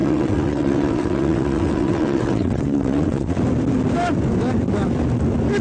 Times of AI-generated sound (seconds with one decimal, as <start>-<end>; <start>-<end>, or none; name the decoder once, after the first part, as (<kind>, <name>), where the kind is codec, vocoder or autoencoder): 0.0-3.4 (vocoder, WaveNeXt)